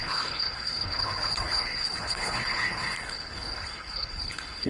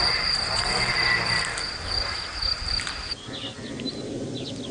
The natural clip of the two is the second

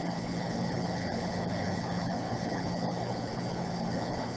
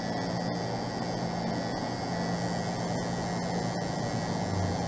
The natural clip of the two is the second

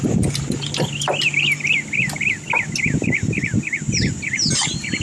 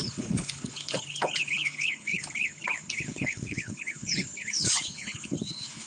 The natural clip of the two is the first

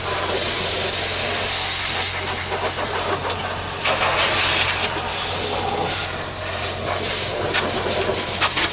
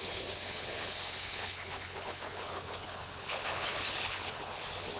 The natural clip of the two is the first